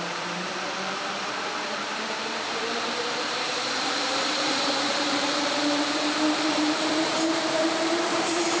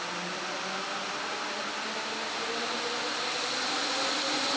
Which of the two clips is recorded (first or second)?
second